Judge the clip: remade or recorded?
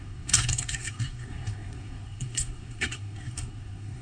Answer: remade